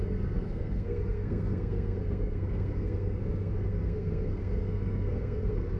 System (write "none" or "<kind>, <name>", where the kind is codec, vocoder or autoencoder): codec, SNAC